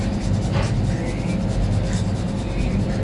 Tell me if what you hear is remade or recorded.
recorded